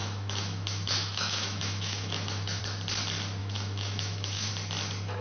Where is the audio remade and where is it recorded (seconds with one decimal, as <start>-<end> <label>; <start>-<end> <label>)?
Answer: 0.0-2.6 remade; 2.6-3.4 recorded; 3.4-4.5 remade; 4.5-5.2 recorded